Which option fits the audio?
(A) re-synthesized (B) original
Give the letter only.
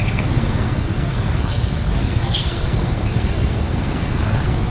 A